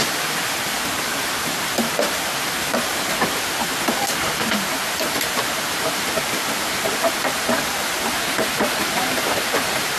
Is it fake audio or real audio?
fake